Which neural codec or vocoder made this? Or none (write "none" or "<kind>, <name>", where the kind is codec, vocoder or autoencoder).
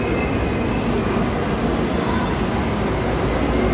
none